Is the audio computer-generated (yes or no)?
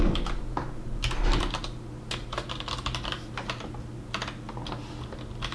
no